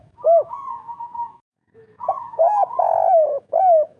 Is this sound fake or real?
fake